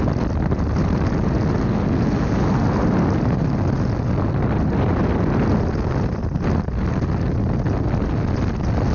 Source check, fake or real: real